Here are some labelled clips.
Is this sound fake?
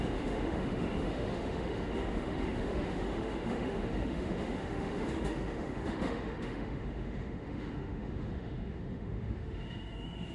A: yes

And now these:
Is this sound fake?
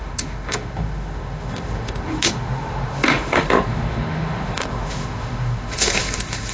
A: yes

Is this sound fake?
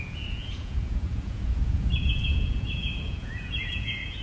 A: yes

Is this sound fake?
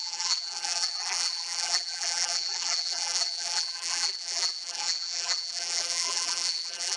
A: yes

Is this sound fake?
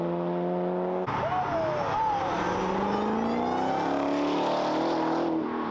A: no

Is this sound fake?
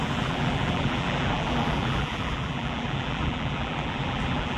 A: yes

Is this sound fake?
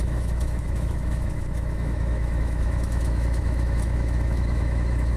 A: yes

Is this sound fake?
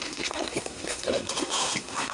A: yes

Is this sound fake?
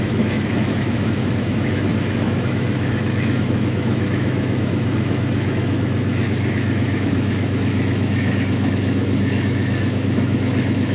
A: yes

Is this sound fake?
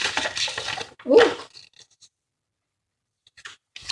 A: no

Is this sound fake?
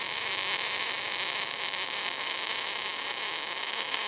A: no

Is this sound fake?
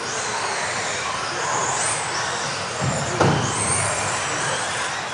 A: no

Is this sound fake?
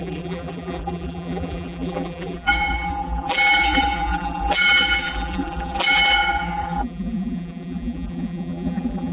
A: yes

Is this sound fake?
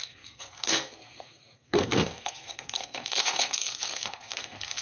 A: yes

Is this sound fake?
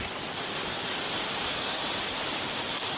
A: no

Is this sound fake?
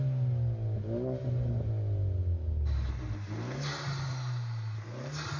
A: no